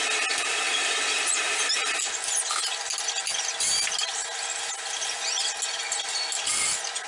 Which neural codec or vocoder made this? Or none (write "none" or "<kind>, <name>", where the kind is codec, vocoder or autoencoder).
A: none